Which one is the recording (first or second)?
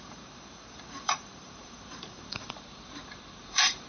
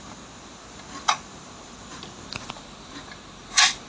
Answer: second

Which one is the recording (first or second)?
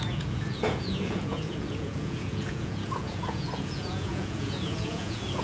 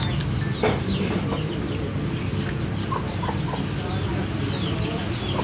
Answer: second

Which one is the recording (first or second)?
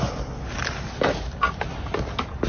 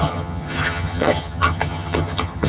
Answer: first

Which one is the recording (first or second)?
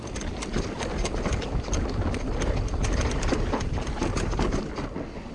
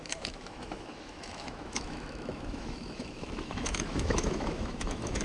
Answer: first